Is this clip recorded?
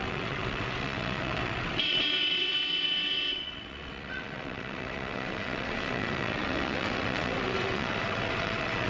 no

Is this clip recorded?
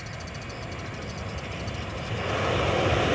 yes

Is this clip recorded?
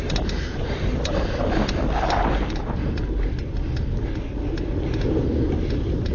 yes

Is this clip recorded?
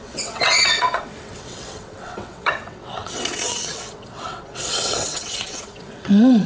no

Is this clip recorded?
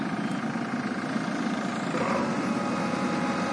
yes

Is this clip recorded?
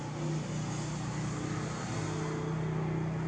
yes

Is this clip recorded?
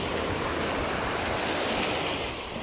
yes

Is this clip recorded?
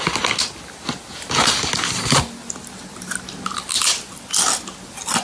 yes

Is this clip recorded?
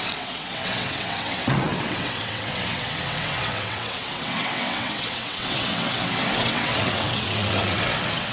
no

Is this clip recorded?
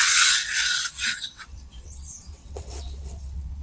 no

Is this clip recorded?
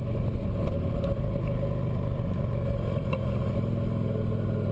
yes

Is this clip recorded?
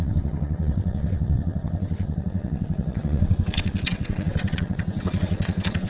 no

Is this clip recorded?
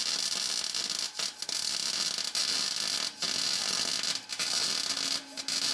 yes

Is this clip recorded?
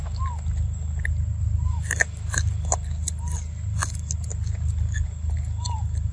yes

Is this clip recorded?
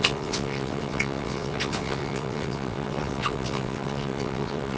no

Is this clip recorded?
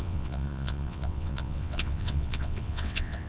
no